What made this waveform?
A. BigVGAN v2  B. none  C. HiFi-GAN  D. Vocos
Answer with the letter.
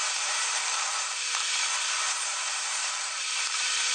A